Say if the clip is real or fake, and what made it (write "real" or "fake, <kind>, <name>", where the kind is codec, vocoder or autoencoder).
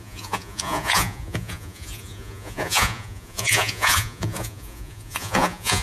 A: fake, vocoder, Vocos